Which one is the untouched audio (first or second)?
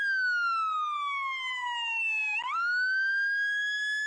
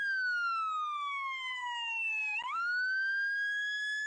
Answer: first